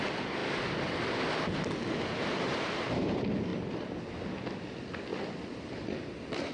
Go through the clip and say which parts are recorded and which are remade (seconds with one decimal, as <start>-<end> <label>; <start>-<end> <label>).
0.0-0.4 remade; 0.4-2.2 recorded; 2.2-3.5 remade; 3.5-4.5 recorded; 4.5-5.1 remade; 5.1-5.7 recorded; 5.7-6.5 remade